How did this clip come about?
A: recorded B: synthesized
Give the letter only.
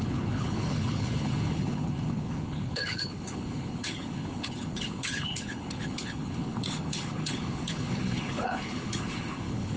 B